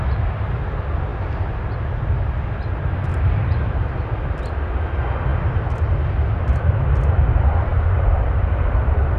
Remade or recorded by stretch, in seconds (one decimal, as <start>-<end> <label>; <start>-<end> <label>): 0.0-3.1 recorded; 3.1-4.0 remade; 4.0-7.7 recorded; 7.7-9.2 remade